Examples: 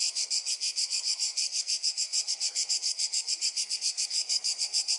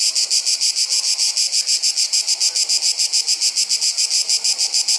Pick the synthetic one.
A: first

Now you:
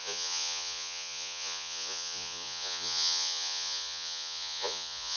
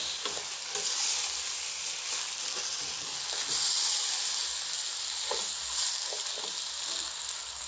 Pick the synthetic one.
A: first